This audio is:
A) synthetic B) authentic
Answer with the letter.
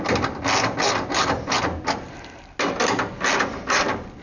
B